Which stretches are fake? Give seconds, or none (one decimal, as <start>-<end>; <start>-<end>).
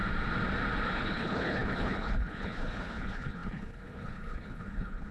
0.9-5.1